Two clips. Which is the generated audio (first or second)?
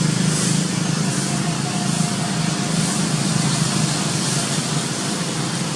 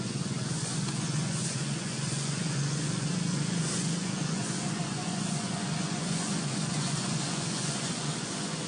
second